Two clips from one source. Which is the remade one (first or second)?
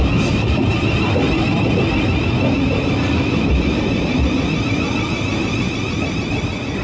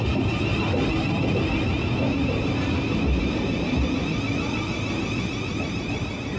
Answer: first